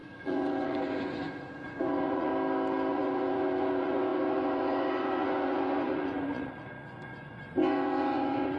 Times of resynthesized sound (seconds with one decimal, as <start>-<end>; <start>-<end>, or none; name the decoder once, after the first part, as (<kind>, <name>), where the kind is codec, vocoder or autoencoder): 0.0-2.3 (vocoder, Vocos); 2.9-8.6